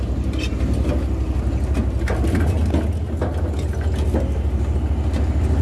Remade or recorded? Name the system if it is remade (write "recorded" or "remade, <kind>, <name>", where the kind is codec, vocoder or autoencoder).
recorded